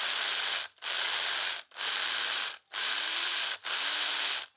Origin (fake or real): real